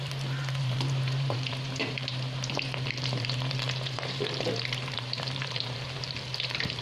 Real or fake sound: fake